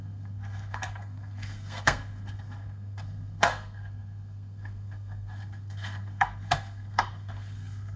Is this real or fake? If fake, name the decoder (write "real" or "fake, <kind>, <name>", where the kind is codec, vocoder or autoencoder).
fake, codec, SNAC